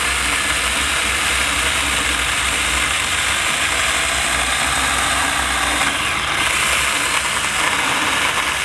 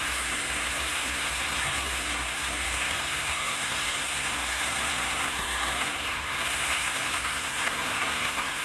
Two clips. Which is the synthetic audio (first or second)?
second